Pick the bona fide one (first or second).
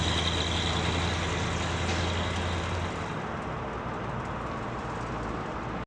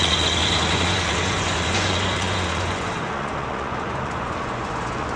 first